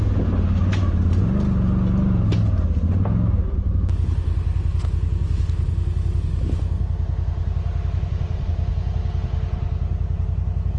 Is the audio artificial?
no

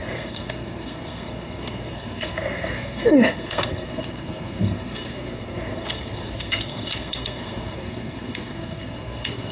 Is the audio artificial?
yes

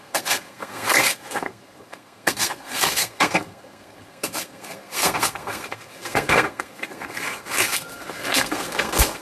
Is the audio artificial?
yes